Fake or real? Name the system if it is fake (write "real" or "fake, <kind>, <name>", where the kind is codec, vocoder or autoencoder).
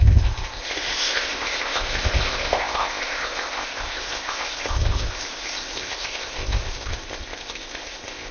fake, codec, ZipCodec